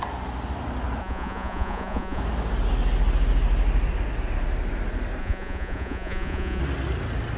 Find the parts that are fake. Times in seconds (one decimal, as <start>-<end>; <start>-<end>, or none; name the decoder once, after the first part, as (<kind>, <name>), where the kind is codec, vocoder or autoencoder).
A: 1.0-2.2 (vocoder, Vocos); 5.2-6.6

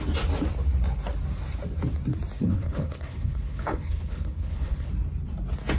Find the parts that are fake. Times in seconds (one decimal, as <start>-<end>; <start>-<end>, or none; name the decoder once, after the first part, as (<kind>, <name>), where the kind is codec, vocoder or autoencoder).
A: 2.4-4.9 (codec, HILCodec)

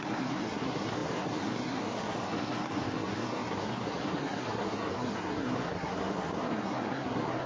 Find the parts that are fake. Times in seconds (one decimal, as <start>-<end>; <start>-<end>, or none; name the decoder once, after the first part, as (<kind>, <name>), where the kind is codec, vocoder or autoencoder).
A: 0.0-7.5 (codec, SNAC)

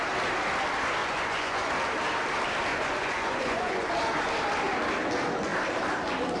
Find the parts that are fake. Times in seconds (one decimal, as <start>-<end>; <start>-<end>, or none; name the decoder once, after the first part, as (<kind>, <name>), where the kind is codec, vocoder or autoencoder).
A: 1.0-1.7 (vocoder, Vocos); 2.7-3.9

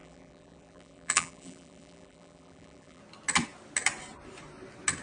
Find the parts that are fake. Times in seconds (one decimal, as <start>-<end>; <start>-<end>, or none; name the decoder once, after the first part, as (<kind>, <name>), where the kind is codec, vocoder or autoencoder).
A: 0.0-3.0 (vocoder, BigVGAN v2)